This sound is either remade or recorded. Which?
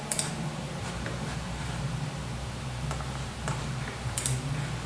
remade